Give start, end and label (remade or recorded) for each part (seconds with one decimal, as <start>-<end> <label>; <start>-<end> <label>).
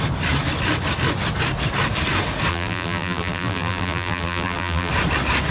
0.0-2.5 recorded; 2.5-4.9 remade; 4.9-5.5 recorded